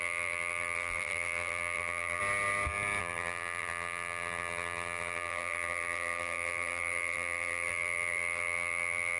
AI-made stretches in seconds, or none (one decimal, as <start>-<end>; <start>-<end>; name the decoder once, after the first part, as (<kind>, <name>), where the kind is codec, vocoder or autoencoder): 0.0-2.2 (vocoder, BigVGAN v2); 3.0-9.2